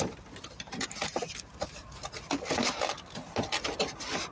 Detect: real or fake real